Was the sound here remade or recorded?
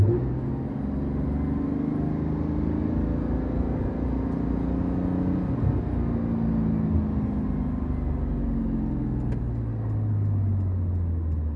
recorded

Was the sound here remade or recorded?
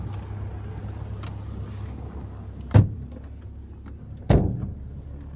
recorded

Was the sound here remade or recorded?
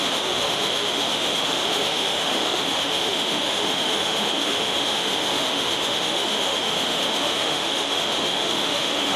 remade